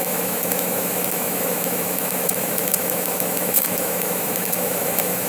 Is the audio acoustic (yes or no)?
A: no